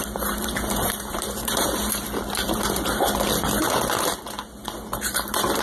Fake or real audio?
fake